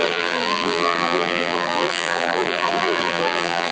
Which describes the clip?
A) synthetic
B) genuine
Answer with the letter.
A